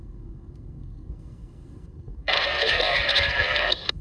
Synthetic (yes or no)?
yes